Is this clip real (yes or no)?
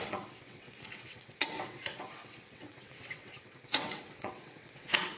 no